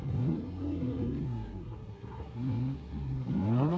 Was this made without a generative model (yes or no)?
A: no